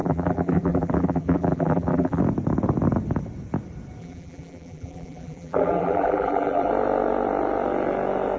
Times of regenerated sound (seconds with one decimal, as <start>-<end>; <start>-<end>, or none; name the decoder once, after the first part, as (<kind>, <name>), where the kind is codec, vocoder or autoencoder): 0.0-2.2 (vocoder, BigVGAN v2); 4.0-6.7